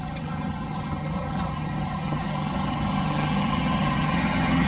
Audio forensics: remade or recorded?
remade